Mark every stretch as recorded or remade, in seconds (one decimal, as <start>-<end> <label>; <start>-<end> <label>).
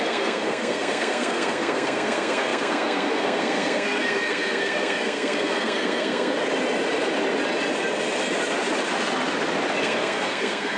0.0-6.4 remade; 6.4-9.8 recorded; 9.8-10.8 remade